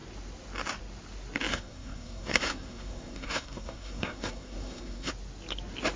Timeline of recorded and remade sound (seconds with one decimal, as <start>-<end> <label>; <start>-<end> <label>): 0.0-1.5 recorded; 1.5-5.1 remade; 5.1-6.0 recorded